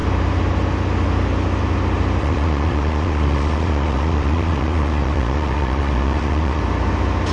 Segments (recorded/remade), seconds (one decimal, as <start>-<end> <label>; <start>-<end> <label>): 0.0-2.2 recorded; 2.2-6.6 remade; 6.6-7.3 recorded